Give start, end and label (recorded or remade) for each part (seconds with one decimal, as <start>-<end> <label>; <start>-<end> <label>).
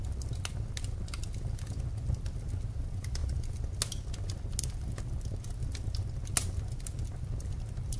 0.0-8.0 recorded